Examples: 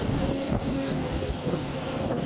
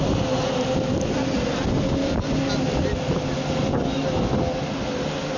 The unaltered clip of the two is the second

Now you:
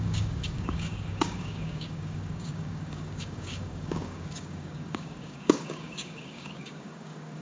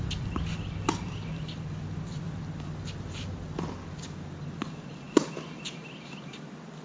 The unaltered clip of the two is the second